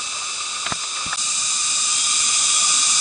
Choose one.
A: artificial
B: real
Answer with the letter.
B